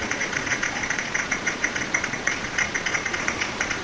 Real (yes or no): no